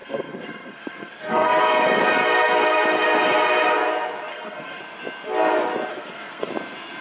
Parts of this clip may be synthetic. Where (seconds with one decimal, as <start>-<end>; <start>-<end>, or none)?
0.0-1.6; 4.3-4.8; 5.9-6.5